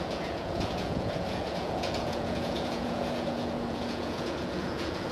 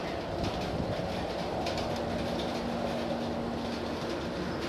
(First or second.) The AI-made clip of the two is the first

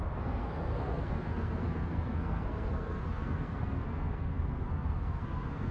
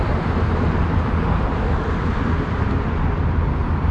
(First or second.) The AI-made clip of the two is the first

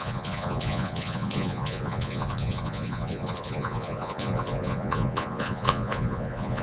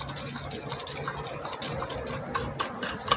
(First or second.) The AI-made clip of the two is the first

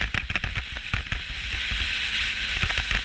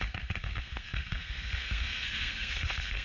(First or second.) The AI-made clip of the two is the second